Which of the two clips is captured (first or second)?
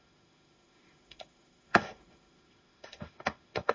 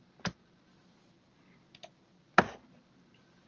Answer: second